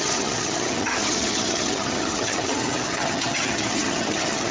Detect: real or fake fake